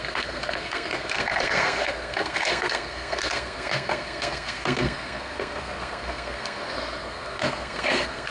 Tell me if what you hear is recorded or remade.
remade